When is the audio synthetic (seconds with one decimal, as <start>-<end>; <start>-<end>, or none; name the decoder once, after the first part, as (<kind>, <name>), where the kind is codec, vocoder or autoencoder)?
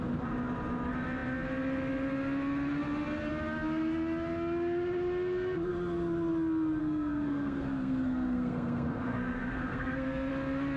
6.8-10.3 (codec, SNAC)